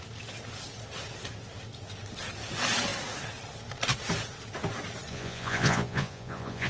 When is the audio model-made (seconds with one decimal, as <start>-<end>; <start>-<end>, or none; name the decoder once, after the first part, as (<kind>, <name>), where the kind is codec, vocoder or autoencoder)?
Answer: 5.1-6.7 (vocoder, Vocos)